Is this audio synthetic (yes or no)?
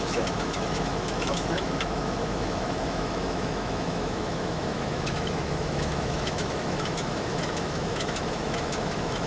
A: yes